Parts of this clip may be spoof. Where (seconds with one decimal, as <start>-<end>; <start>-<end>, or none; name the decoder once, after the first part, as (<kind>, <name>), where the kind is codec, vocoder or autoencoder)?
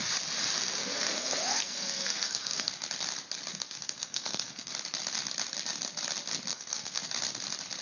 0.8-2.7 (codec, SNAC); 3.5-4.7; 6.5-7.1